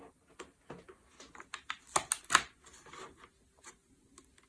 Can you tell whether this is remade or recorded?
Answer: recorded